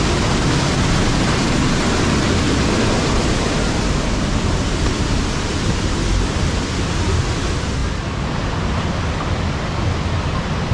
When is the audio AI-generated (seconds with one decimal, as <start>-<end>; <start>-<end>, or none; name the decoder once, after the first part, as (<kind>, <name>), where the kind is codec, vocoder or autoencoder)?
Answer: none